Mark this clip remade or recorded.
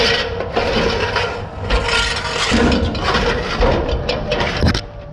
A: recorded